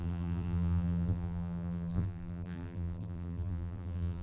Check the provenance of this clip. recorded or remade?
remade